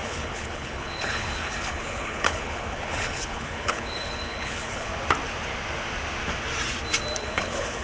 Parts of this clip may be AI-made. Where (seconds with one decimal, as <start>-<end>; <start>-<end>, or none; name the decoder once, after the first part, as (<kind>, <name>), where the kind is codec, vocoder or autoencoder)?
0.0-4.9 (codec, HILCodec); 7.2-7.8